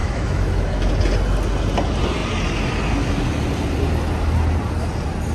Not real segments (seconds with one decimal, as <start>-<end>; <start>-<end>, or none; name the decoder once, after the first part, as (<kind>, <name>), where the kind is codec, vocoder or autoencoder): 0.0-0.9 (autoencoder, DAC-VAE)